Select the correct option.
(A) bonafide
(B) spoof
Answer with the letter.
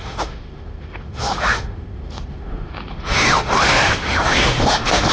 B